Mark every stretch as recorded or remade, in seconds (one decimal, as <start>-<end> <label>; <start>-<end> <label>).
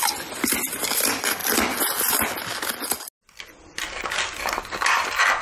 0.0-5.4 recorded